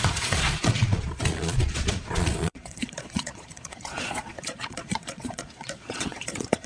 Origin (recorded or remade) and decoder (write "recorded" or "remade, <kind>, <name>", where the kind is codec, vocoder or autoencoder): remade, vocoder, Vocos